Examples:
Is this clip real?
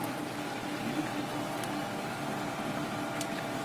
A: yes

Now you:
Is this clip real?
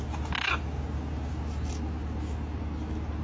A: yes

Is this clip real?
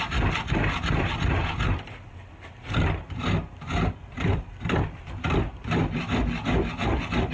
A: yes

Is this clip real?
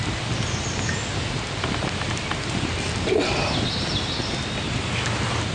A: yes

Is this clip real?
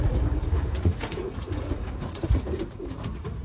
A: no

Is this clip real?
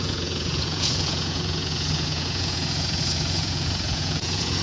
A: no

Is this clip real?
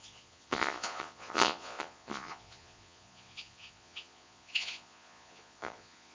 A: no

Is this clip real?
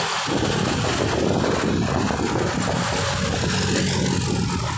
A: yes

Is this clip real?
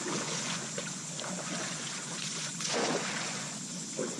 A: no